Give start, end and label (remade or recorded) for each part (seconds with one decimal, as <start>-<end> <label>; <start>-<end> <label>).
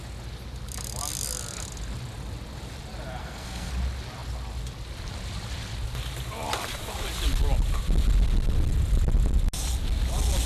0.0-3.2 recorded; 3.2-3.7 remade; 3.7-10.5 recorded